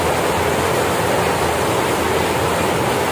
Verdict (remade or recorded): recorded